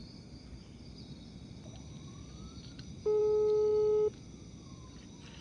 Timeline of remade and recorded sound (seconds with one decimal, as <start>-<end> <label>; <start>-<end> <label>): 0.0-5.4 recorded